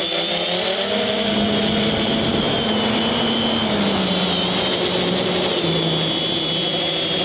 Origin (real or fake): real